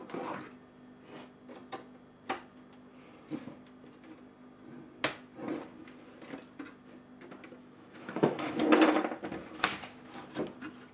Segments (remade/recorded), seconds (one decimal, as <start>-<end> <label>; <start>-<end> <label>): 0.0-7.6 recorded; 7.6-8.6 remade; 8.6-10.9 recorded